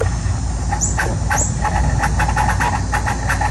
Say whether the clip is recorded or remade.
recorded